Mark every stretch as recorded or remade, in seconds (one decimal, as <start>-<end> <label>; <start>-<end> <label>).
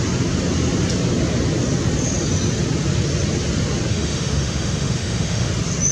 0.0-3.9 recorded; 3.9-5.5 remade; 5.5-5.9 recorded